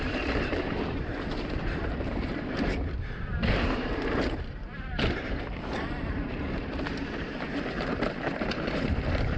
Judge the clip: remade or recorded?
remade